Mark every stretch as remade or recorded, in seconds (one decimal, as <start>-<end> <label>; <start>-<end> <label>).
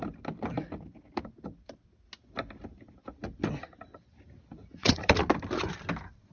0.0-4.7 recorded; 4.7-5.3 remade; 5.3-6.3 recorded